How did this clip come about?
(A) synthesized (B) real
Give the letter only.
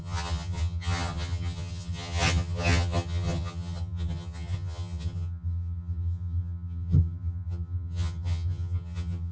A